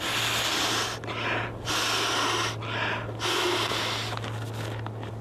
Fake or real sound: real